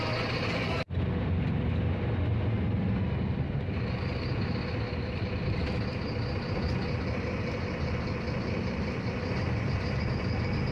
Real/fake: real